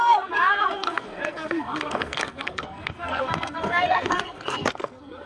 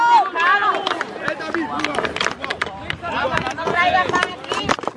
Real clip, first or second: second